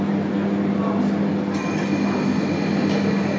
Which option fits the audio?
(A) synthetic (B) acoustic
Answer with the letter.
B